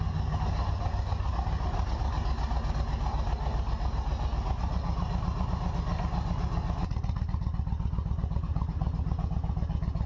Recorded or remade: recorded